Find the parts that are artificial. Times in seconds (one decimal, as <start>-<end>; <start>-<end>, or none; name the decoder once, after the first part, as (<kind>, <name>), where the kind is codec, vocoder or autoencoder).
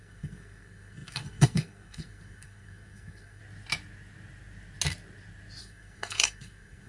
0.0-3.4 (codec, SNAC); 5.6-6.9